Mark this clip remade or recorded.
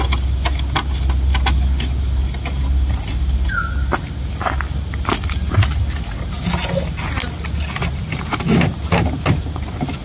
recorded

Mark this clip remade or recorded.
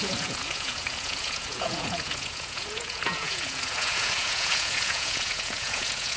remade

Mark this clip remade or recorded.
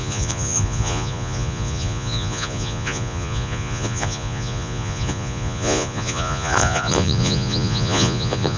remade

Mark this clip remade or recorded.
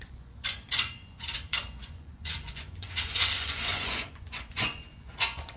remade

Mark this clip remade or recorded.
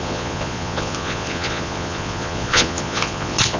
remade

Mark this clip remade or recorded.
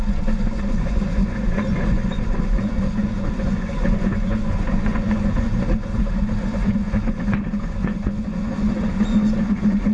remade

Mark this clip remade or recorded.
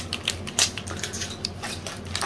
recorded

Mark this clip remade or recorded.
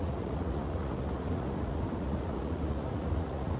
remade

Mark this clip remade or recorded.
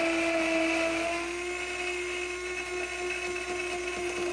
recorded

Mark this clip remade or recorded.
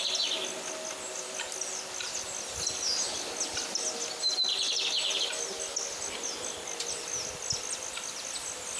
recorded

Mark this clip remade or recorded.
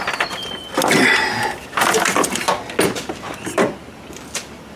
recorded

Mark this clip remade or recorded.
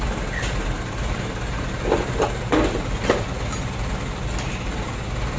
recorded